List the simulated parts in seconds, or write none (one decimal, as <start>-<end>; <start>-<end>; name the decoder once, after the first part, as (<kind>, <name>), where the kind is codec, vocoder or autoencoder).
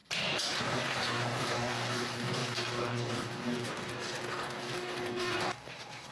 0.6-6.1 (codec, DAC)